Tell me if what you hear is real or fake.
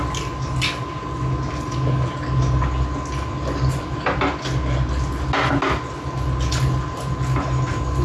real